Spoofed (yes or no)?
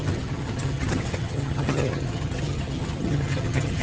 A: yes